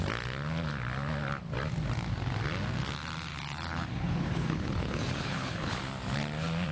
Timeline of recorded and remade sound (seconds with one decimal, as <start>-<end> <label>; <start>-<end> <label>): 0.0-3.3 recorded; 3.3-5.8 remade; 5.8-6.7 recorded